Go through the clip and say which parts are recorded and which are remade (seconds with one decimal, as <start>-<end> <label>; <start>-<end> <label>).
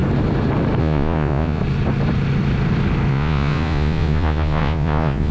0.0-0.8 recorded; 0.8-1.6 remade; 1.6-3.1 recorded; 3.1-5.3 remade